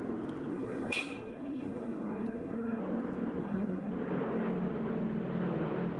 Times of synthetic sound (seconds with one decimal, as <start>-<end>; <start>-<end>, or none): 0.5-2.8; 3.4-3.9